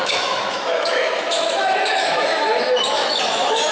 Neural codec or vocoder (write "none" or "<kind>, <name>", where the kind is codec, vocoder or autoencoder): autoencoder, DAC-VAE